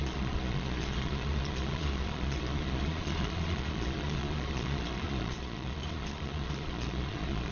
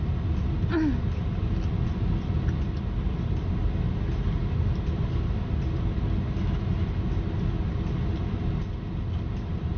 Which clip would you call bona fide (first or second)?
second